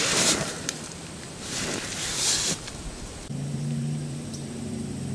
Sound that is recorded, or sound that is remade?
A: remade